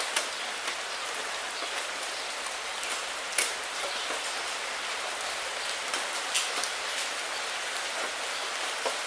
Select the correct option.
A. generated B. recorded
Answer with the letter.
B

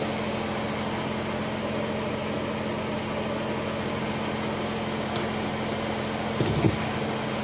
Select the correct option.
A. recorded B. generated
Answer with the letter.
A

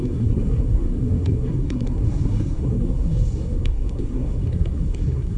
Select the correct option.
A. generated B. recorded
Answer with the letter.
A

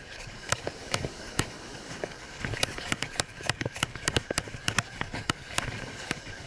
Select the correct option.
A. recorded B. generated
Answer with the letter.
B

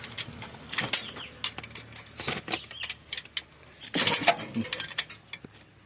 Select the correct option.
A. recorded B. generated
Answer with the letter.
A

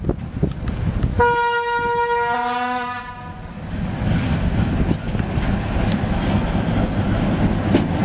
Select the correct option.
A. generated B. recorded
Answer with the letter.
B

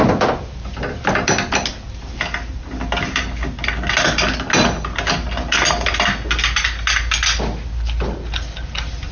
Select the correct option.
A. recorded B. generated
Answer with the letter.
A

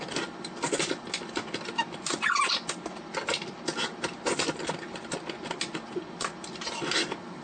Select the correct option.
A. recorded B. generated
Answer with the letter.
A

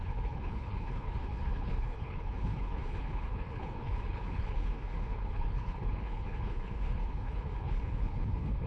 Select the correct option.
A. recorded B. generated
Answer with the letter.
B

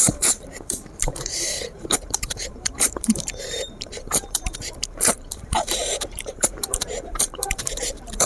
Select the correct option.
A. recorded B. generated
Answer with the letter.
B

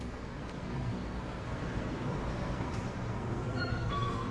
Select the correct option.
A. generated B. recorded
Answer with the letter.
A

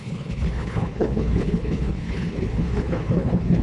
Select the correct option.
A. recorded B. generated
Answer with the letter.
B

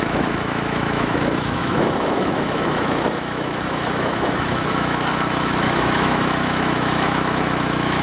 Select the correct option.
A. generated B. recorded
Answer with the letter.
A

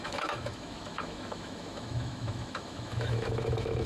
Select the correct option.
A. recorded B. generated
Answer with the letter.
B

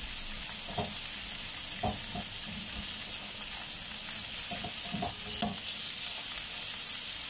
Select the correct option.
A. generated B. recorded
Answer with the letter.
B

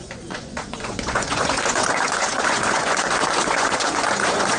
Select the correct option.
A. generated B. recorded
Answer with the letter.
A